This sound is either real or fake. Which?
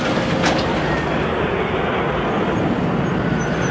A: real